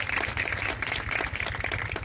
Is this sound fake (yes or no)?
no